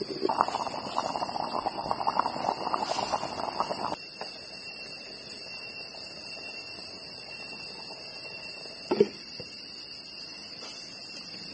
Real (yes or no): yes